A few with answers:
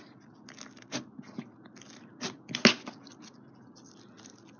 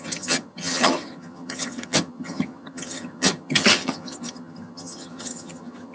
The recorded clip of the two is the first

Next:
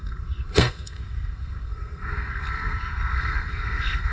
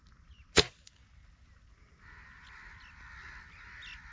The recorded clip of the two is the second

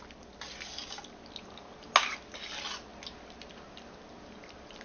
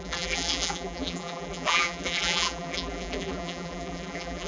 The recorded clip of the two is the first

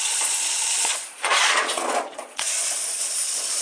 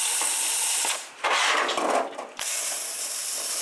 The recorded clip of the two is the second